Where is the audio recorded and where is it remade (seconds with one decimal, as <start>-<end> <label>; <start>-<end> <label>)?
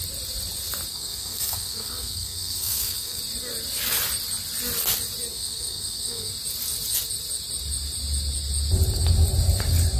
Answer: 0.0-0.9 recorded; 0.9-3.2 remade; 3.2-5.3 recorded; 5.3-6.3 remade; 6.3-10.0 recorded